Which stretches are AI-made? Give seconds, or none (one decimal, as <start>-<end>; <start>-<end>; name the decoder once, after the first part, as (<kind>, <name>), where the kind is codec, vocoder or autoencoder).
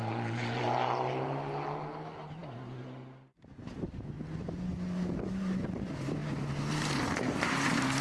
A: none